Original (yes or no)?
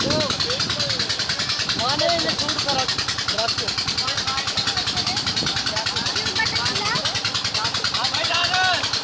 yes